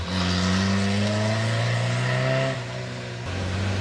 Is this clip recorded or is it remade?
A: recorded